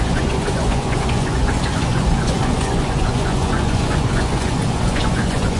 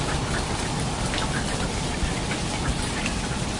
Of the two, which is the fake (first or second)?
first